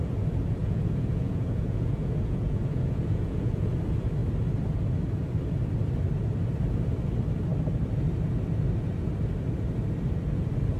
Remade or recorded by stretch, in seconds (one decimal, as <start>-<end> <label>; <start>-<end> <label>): 0.0-0.6 recorded; 0.6-3.7 remade; 3.7-10.8 recorded